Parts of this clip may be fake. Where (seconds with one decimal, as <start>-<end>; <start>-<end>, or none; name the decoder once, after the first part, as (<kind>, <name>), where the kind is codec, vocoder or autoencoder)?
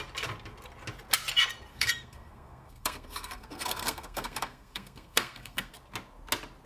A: 1.7-5.7 (codec, SNAC)